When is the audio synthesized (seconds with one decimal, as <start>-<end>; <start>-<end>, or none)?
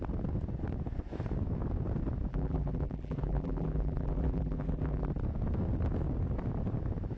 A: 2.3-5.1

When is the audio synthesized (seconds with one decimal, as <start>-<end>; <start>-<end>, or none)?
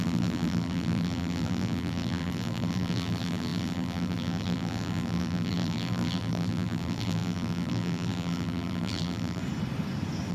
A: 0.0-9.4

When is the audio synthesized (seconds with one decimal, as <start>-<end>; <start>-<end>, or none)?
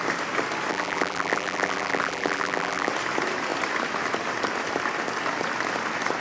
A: 0.7-2.9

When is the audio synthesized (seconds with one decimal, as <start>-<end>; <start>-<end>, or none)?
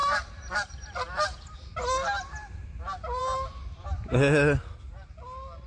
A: 0.0-1.7